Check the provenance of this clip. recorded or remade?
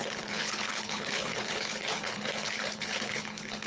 remade